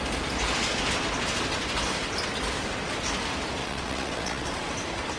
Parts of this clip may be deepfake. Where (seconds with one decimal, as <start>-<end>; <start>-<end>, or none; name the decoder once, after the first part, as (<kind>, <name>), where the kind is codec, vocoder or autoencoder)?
3.6-4.7 (vocoder, WaveNeXt)